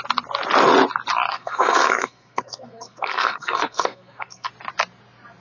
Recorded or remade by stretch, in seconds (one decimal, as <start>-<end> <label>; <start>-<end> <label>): 0.0-1.3 recorded; 1.3-4.5 remade; 4.5-5.4 recorded